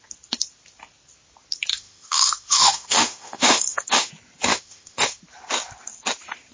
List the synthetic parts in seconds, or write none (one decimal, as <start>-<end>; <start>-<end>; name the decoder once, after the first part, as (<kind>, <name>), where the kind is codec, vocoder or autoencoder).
1.7-4.1 (autoencoder, DAC-VAE); 4.5-5.2